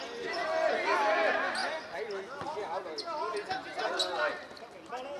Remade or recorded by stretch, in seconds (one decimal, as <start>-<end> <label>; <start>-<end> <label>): 0.0-5.2 recorded